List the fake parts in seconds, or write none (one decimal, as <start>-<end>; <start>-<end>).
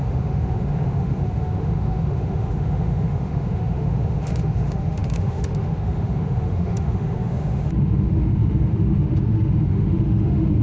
0.0-10.6